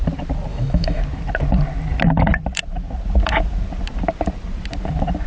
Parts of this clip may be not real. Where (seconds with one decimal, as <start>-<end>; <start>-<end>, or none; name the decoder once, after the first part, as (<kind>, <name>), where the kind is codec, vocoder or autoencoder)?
0.5-1.0 (autoencoder, DAC-VAE)